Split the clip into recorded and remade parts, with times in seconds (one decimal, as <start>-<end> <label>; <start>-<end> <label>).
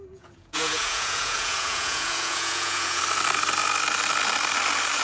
0.0-3.0 remade; 3.0-5.0 recorded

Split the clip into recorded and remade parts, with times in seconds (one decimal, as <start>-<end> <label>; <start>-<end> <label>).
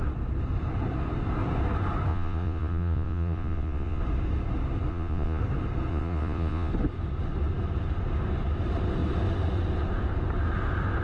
0.0-2.1 recorded; 2.1-4.0 remade; 4.0-4.9 recorded; 4.9-5.4 remade; 5.4-5.9 recorded; 5.9-6.7 remade; 6.7-11.0 recorded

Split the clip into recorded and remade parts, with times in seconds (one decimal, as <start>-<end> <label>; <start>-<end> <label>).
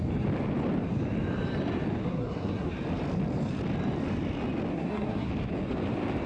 0.0-2.0 recorded; 2.0-2.7 remade; 2.7-4.7 recorded; 4.7-5.3 remade; 5.3-6.3 recorded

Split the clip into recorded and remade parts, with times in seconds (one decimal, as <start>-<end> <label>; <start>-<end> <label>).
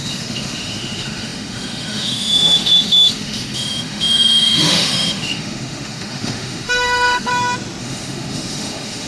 0.0-7.3 remade; 7.3-7.8 recorded; 7.8-9.1 remade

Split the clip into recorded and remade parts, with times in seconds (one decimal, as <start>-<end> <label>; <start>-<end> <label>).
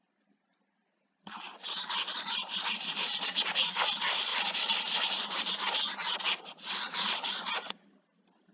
0.0-8.5 recorded